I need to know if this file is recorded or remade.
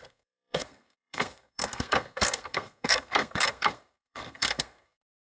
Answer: remade